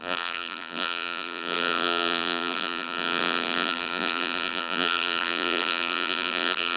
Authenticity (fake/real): fake